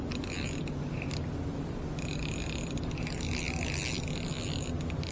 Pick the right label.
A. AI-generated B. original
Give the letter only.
B